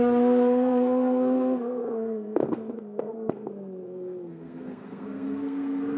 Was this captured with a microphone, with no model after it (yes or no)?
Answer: no